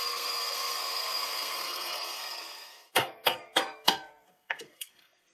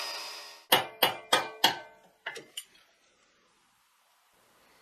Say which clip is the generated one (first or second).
first